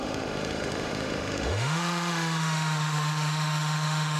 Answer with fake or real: fake